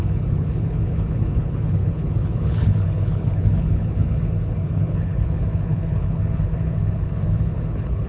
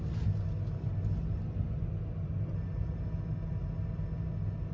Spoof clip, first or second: first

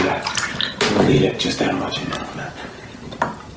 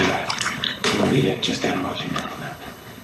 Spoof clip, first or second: second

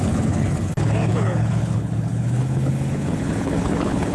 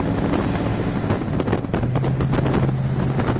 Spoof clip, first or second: first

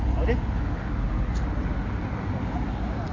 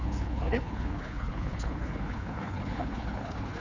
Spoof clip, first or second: second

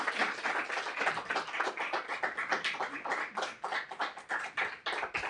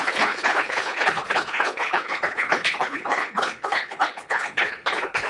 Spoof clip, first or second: second